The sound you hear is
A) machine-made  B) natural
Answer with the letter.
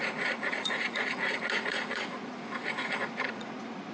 A